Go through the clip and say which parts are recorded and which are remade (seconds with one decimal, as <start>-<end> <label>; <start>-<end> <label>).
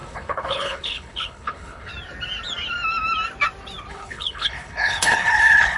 0.0-1.9 remade; 1.9-3.9 recorded; 3.9-5.8 remade